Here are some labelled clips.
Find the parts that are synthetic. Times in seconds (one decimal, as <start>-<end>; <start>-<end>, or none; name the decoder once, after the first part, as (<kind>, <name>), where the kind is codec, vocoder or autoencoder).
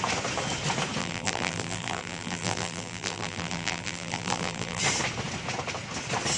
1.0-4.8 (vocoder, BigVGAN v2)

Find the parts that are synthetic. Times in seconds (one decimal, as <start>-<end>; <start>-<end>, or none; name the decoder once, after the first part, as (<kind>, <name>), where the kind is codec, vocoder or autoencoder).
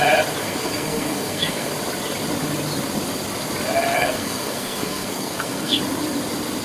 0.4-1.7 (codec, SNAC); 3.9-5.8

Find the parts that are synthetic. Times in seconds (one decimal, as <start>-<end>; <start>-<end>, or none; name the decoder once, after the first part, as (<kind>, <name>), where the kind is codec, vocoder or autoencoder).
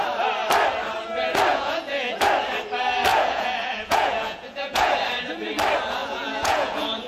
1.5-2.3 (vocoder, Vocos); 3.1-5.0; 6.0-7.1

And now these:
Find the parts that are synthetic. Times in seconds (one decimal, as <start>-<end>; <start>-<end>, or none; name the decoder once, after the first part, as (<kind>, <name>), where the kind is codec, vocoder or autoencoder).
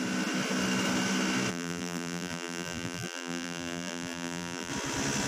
1.5-4.7 (vocoder, BigVGAN v2)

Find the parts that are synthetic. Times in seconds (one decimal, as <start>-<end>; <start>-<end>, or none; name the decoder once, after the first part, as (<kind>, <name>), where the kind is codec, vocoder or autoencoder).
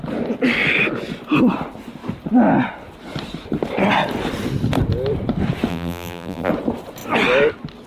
5.7-6.5 (vocoder, BigVGAN v2)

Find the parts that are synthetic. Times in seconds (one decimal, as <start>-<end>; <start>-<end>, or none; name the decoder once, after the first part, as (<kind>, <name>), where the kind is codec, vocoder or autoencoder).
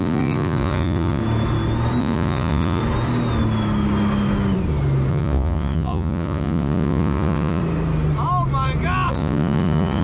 0.0-1.2 (vocoder, Vocos); 2.0-2.8; 5.1-7.6; 9.1-10.0